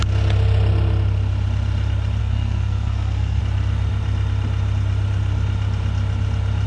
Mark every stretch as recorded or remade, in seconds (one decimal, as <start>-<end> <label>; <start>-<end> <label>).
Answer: 0.0-2.2 recorded; 2.2-3.4 remade; 3.4-6.7 recorded